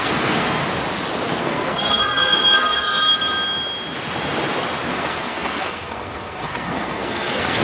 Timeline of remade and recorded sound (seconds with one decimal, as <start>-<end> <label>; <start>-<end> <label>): 0.0-0.6 remade; 0.6-1.4 recorded; 1.4-3.0 remade; 3.0-4.9 recorded; 4.9-7.6 remade